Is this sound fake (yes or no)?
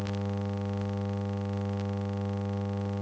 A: no